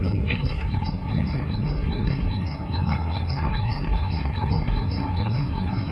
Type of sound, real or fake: fake